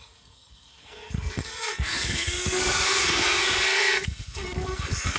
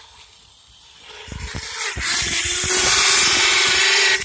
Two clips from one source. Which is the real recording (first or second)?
second